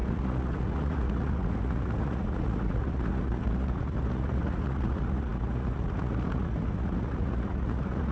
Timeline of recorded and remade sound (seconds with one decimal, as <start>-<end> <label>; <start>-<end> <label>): 0.0-8.1 remade